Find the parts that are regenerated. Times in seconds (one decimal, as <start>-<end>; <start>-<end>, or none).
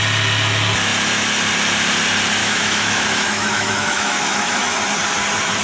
2.4-4.8